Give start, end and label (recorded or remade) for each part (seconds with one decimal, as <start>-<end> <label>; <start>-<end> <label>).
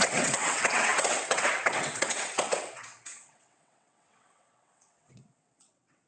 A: 0.0-6.1 remade